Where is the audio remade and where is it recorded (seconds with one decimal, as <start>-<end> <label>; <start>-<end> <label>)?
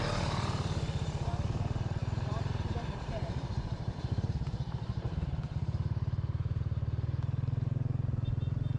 0.0-2.0 recorded; 2.0-6.6 remade; 6.6-8.8 recorded